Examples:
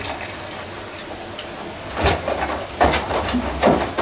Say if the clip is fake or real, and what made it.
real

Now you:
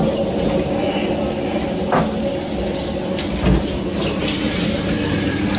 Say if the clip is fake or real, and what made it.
real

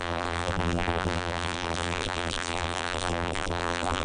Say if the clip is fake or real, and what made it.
fake, vocoder, BigVGAN v2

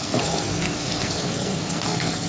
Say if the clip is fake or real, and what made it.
fake, codec, SNAC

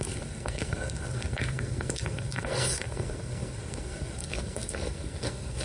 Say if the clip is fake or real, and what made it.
fake, codec, SNAC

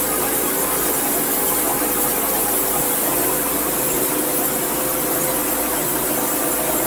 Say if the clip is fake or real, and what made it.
real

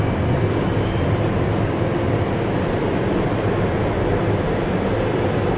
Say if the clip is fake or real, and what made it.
real